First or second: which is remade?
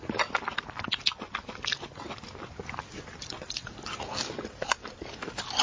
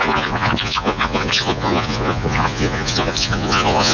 second